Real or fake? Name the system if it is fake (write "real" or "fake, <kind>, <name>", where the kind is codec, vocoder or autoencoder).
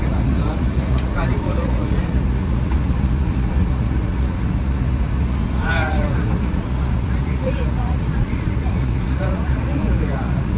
fake, vocoder, Vocos